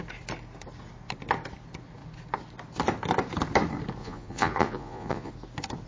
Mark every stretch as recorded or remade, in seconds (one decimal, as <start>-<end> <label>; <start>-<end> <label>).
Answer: 0.0-4.0 recorded; 4.0-5.3 remade; 5.3-5.9 recorded